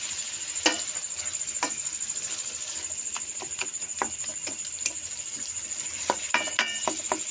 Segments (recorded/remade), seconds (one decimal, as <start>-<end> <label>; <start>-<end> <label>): 0.0-4.3 recorded; 4.3-6.3 remade; 6.3-7.3 recorded